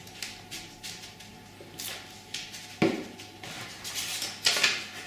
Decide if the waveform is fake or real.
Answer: real